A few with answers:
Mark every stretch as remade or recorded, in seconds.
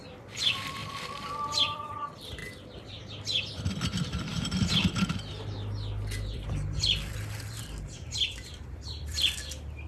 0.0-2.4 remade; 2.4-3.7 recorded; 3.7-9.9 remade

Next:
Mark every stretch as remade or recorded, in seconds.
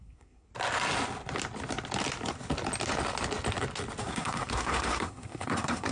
0.0-0.5 remade; 0.5-4.0 recorded; 4.0-5.9 remade